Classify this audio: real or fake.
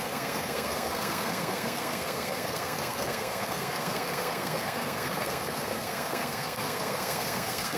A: fake